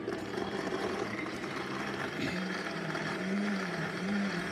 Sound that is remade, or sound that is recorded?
remade